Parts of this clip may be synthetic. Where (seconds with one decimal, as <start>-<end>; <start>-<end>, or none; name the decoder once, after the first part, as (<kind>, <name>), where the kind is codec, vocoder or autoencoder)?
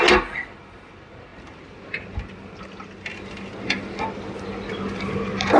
none